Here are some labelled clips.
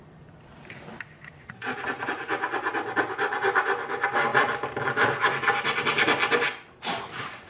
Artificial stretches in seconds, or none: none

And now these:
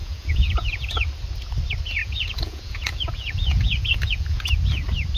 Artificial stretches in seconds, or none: 0.0-1.1 (vocoder, Vocos); 2.0-4.5

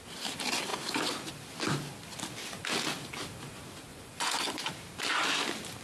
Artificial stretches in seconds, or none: 3.9-4.6 (vocoder, Vocos)

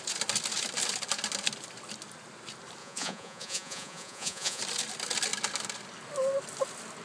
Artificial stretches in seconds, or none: 2.8-4.6 (vocoder, Vocos)

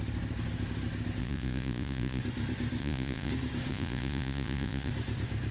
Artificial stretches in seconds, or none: 1.2-2.2 (vocoder, Vocos); 2.8-3.3; 3.7-4.9